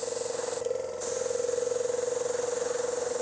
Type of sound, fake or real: real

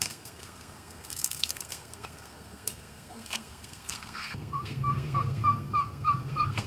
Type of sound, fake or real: fake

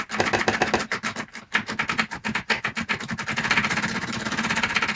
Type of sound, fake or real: real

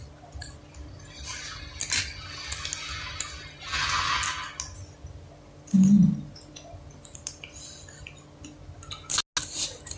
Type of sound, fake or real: real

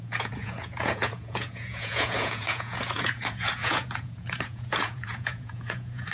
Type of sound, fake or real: fake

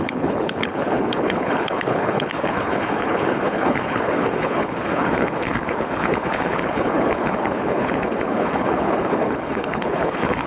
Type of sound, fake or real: fake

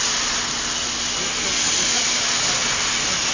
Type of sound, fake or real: real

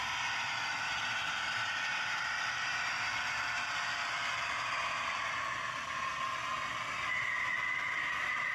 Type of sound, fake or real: fake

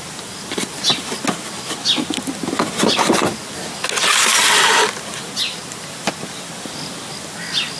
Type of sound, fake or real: real